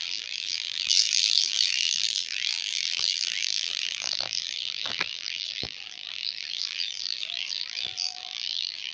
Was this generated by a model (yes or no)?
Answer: yes